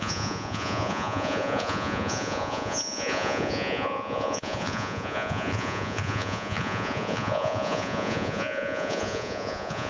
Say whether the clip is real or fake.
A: fake